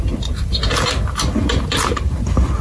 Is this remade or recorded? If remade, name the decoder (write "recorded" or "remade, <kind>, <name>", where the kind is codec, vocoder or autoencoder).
recorded